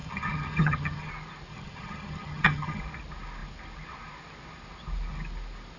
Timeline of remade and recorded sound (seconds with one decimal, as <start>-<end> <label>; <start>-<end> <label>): 0.0-1.1 remade; 1.1-1.5 recorded; 1.5-2.8 remade; 2.8-5.8 recorded